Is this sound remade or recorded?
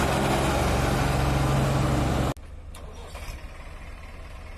recorded